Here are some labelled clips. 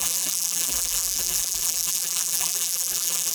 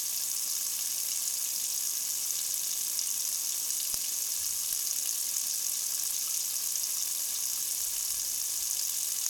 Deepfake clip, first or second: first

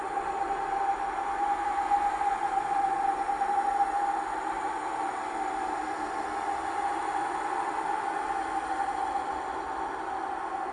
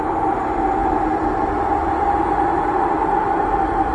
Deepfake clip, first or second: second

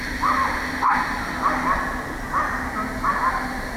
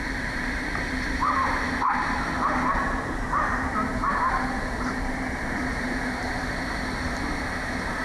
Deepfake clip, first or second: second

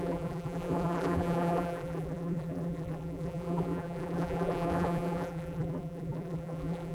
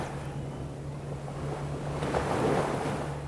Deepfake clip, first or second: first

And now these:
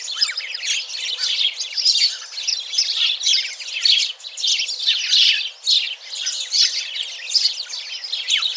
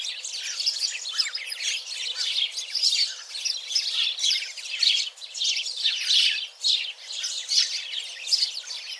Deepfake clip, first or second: second